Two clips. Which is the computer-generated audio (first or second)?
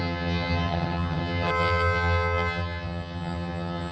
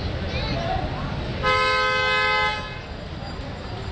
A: first